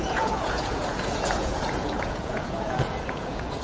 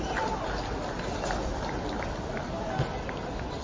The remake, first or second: first